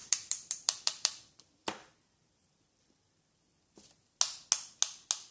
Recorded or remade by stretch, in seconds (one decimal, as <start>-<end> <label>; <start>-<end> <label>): 0.0-3.2 remade; 3.2-5.3 recorded